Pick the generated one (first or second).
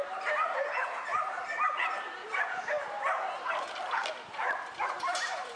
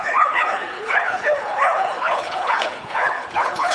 second